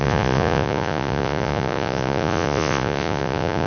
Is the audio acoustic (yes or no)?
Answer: no